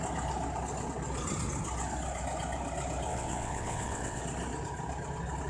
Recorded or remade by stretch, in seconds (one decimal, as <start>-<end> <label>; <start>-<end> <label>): 0.0-3.1 recorded; 3.1-4.2 remade; 4.2-5.5 recorded